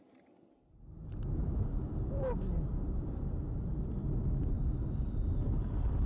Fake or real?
real